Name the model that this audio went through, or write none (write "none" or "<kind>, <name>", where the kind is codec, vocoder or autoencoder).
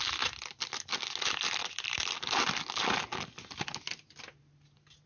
none